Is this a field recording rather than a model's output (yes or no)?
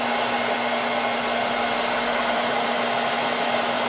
yes